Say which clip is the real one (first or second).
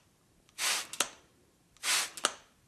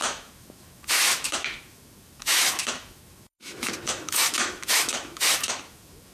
first